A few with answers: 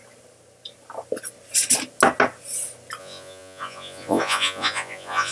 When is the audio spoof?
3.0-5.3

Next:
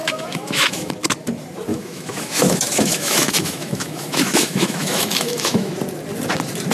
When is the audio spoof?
0.0-0.9; 1.7-5.7

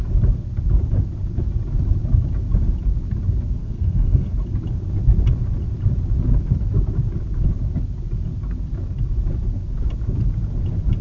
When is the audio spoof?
3.6-4.3

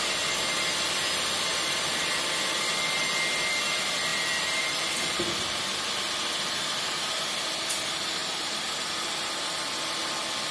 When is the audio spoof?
1.5-2.2; 4.1-7.0; 8.2-9.3

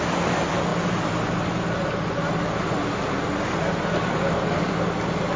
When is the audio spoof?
none